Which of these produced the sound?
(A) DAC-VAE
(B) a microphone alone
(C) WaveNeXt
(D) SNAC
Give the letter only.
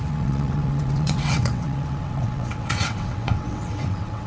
C